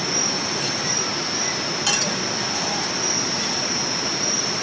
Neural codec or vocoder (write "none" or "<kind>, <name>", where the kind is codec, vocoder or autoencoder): none